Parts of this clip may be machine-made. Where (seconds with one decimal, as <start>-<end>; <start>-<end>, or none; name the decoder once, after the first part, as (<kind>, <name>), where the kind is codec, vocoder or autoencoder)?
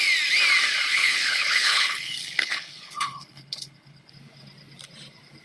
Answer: 0.9-4.1 (codec, HILCodec)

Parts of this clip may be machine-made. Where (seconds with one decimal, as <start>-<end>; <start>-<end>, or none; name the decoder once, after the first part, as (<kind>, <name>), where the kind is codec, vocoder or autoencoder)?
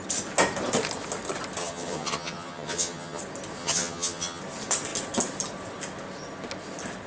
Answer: 1.6-3.2 (vocoder, HiFi-GAN); 3.6-4.4